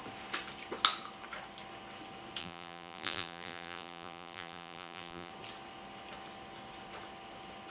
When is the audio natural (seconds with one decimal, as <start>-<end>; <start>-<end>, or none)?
0.0-2.4; 5.3-7.7